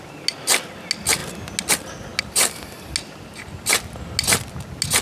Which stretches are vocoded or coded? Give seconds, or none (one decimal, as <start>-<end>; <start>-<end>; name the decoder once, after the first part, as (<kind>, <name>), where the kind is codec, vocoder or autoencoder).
none